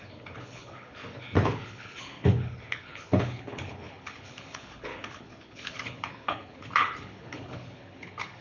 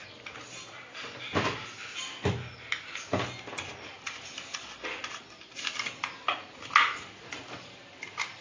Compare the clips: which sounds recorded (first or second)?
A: second